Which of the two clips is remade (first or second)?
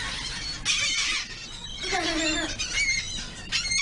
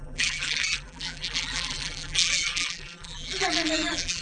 second